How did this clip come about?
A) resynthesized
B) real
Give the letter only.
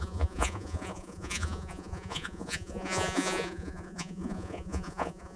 A